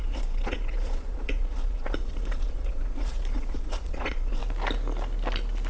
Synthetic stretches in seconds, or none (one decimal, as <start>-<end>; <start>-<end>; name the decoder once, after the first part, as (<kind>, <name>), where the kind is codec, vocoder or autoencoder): 0.0-4.4 (vocoder, Vocos)